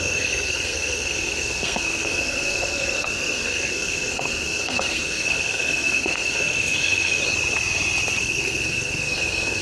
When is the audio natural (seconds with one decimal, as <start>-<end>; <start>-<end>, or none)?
7.2-8.2